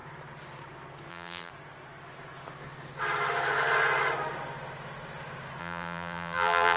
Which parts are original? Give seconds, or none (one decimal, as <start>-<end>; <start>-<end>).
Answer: 0.0-1.1; 1.5-5.6